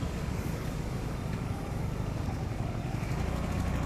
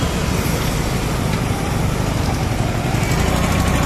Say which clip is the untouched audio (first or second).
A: second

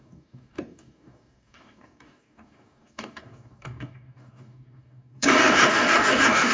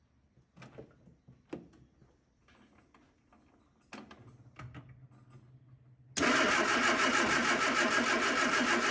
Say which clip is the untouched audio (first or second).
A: second